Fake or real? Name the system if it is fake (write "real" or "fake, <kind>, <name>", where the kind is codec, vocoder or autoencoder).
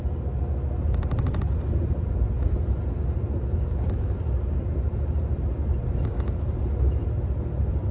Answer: real